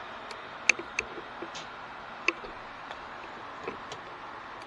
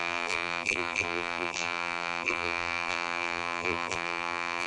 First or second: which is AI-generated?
second